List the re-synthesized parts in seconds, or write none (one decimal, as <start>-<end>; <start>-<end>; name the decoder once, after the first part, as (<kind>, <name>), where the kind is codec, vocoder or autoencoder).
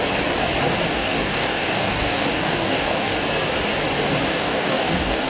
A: 0.9-3.1 (codec, DAC); 4.3-5.3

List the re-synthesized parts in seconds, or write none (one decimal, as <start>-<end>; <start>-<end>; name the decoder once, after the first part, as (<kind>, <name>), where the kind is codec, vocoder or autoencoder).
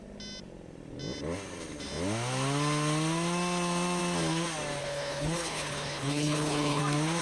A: 4.8-6.8 (codec, HILCodec)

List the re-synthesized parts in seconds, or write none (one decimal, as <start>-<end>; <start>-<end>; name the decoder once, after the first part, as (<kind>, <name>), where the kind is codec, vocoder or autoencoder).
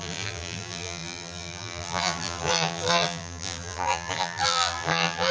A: 0.0-5.3 (vocoder, BigVGAN v2)